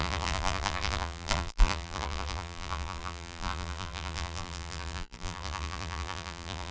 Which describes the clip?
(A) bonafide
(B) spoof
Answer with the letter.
B